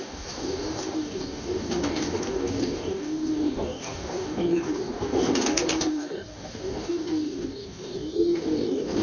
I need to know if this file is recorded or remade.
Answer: remade